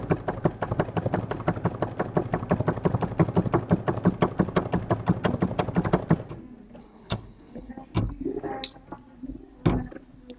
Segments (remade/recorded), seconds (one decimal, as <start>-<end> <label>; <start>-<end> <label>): 0.0-6.8 recorded; 6.8-7.7 remade; 7.7-10.4 recorded